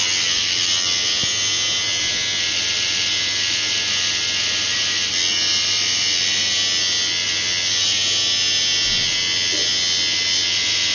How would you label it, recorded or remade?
recorded